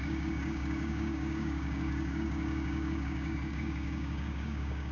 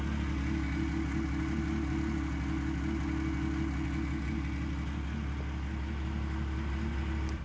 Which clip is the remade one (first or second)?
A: first